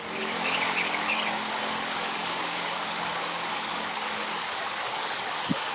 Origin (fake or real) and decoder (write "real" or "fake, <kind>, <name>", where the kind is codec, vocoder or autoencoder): fake, codec, DAC